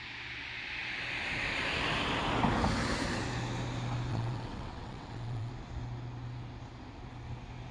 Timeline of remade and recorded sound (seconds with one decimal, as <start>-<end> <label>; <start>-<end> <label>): 0.0-4.1 recorded; 4.1-5.5 remade; 5.5-7.7 recorded